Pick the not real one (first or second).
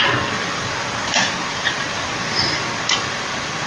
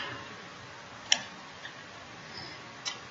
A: first